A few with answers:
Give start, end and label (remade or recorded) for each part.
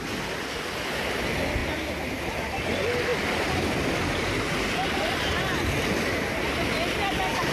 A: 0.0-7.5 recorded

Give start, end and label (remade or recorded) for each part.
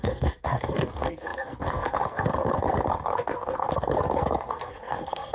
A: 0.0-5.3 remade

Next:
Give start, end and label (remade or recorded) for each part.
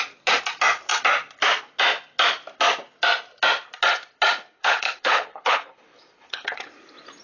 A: 0.0-4.6 recorded; 4.6-6.7 remade; 6.7-7.2 recorded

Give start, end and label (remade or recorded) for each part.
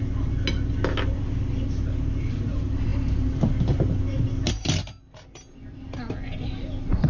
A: 0.0-7.1 recorded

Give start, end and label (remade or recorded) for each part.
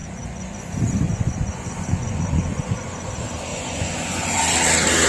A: 0.0-3.1 remade; 3.1-3.5 recorded; 3.5-4.4 remade; 4.4-5.1 recorded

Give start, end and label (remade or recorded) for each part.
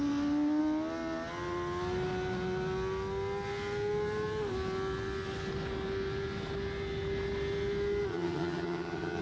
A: 0.0-8.1 recorded; 8.1-9.2 remade